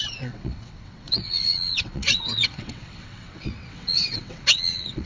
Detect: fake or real fake